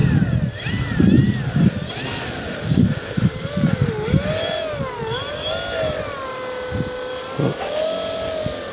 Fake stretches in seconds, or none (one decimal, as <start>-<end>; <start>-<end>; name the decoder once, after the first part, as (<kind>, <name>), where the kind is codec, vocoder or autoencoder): none